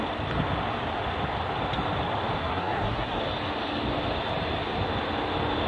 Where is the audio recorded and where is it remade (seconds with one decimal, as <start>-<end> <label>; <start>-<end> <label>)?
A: 0.0-2.4 recorded; 2.4-3.2 remade; 3.2-5.7 recorded